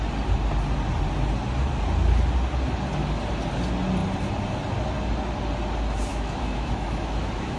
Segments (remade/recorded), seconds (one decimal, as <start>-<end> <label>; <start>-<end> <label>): 0.0-6.1 recorded; 6.1-7.6 remade